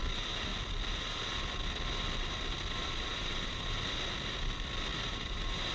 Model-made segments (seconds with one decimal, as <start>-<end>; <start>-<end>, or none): 2.8-3.8; 4.9-5.7